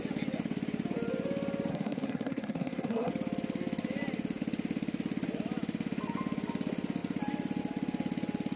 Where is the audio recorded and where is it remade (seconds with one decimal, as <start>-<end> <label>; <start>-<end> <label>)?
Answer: 0.0-1.7 recorded; 1.7-3.1 remade; 3.1-8.6 recorded